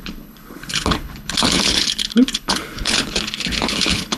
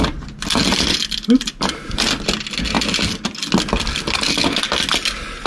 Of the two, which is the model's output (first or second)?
first